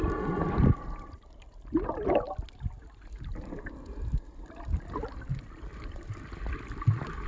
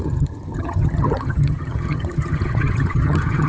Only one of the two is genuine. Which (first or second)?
first